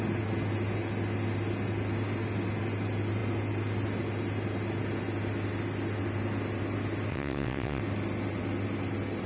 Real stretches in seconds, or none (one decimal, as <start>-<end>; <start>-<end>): 0.0-7.1; 7.8-9.3